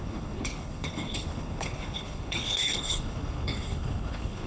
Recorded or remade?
remade